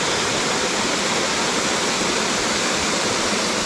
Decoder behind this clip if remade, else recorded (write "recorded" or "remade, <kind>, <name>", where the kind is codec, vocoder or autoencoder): recorded